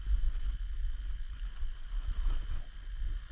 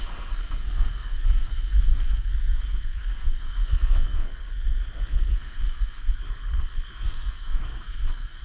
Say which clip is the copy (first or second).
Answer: second